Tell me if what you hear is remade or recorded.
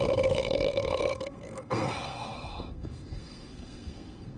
remade